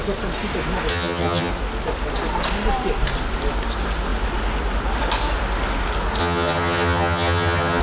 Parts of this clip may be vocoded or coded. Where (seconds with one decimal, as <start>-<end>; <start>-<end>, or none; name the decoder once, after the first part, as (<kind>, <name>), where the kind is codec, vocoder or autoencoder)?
0.9-1.5 (vocoder, HiFi-GAN); 6.2-7.8